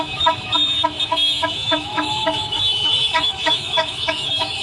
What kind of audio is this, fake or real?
fake